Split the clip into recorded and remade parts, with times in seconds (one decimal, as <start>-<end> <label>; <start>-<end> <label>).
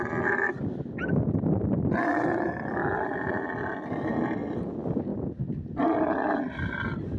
0.0-7.2 recorded